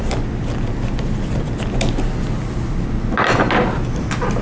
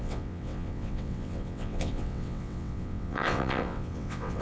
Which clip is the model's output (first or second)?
second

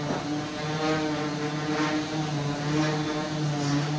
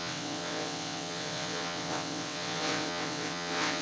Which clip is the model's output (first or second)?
second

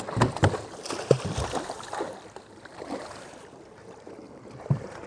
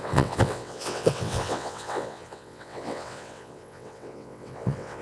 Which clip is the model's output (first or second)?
second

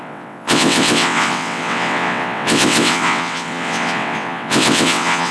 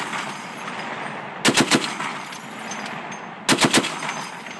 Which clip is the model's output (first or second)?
first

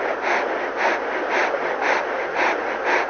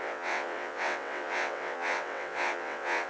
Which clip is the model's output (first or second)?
second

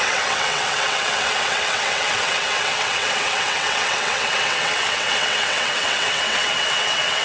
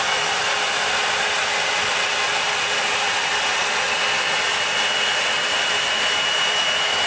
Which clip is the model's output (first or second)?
first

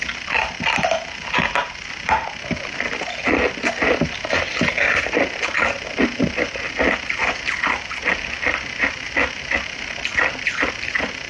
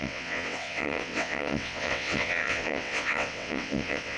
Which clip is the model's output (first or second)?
second